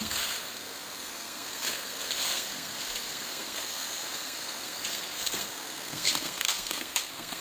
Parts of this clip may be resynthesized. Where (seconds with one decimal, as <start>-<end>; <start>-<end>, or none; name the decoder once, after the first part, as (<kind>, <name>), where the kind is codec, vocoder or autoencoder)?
0.0-7.4 (codec, SNAC)